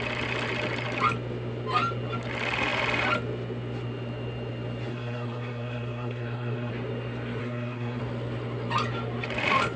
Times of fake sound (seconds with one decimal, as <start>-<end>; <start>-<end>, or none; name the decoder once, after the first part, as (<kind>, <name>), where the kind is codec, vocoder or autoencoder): 4.9-6.7 (codec, SNAC); 7.4-8.0